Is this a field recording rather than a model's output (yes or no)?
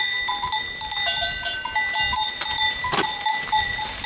yes